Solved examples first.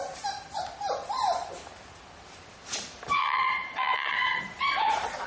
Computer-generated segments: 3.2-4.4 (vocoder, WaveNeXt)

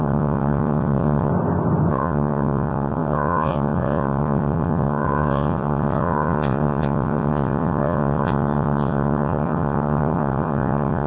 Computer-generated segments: 0.0-1.3 (vocoder, WaveNeXt); 1.9-11.1

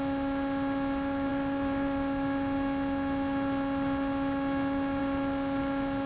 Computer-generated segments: none